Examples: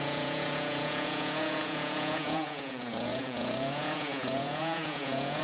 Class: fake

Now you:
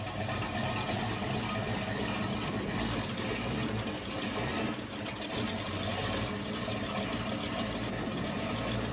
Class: real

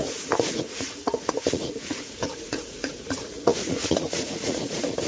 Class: fake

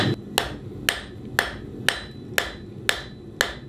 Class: real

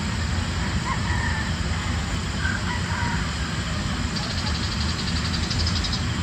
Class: real